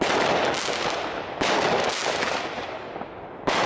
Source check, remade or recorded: recorded